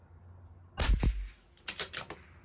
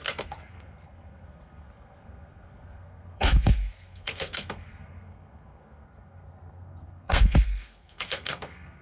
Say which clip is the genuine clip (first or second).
first